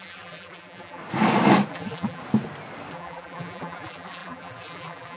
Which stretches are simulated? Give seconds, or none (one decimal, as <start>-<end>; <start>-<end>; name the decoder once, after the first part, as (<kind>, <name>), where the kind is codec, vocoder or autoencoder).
0.0-1.0 (vocoder, BigVGAN v2); 1.7-2.2; 2.9-5.2